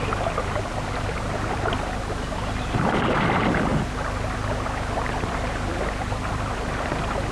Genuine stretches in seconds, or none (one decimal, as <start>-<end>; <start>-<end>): 3.7-5.2